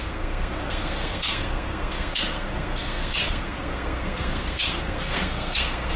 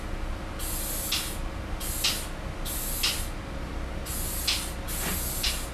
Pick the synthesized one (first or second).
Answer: first